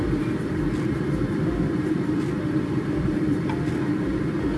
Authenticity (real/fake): fake